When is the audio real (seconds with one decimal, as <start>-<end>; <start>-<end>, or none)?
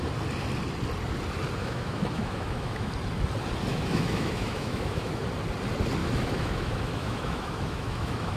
0.0-1.6; 2.9-3.7; 5.2-6.0